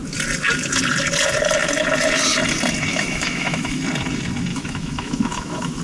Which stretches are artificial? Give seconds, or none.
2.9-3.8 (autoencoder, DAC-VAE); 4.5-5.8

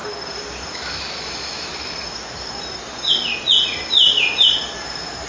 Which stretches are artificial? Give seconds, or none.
0.7-1.7 (autoencoder, DAC-VAE)

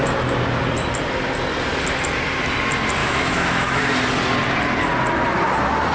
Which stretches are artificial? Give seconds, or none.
3.0-3.8 (autoencoder, DAC-VAE)

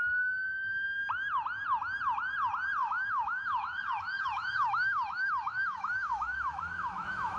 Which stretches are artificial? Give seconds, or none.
2.8-7.4 (autoencoder, DAC-VAE)

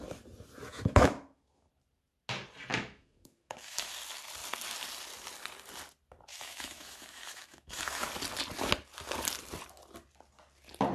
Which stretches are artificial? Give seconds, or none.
0.7-1.7 (autoencoder, DAC-VAE); 2.7-3.9; 6.3-8.1